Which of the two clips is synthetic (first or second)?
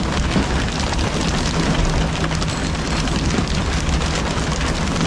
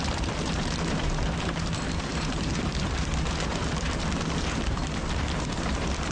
second